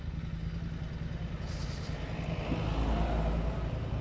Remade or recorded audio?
recorded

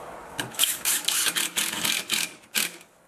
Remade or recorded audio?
remade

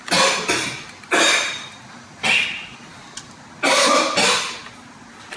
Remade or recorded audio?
recorded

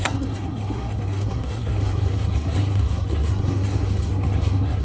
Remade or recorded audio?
remade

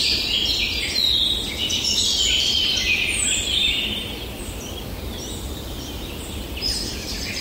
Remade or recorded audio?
remade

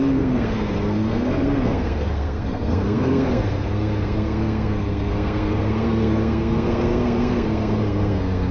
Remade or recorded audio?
remade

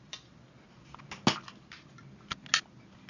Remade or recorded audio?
recorded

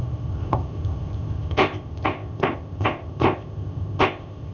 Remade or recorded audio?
remade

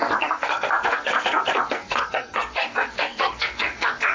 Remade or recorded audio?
remade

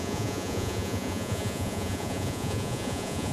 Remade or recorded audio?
remade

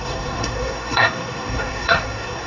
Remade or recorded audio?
remade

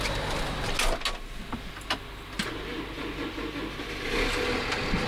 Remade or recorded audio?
recorded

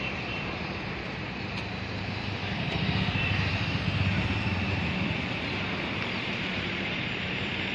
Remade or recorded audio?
remade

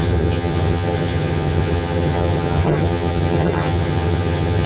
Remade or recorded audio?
remade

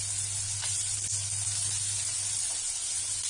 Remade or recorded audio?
recorded